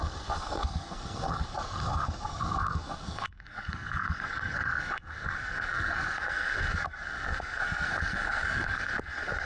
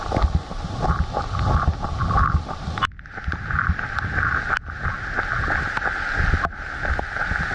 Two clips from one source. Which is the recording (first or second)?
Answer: second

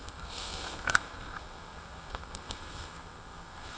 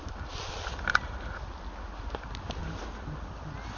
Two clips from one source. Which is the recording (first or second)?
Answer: second